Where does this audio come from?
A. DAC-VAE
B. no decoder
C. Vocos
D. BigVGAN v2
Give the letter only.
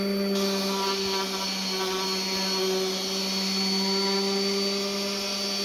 B